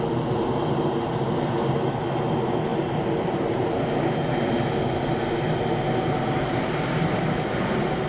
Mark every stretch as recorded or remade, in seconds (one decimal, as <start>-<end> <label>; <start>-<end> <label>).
0.0-8.1 recorded